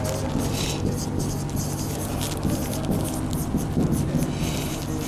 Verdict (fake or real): real